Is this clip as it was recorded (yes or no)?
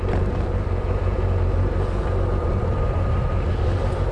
yes